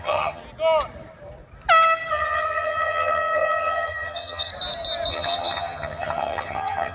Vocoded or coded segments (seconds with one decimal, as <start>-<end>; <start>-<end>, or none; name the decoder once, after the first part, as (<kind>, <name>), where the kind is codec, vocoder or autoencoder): 0.0-0.4 (vocoder, HiFi-GAN); 2.1-4.5; 5.1-6.9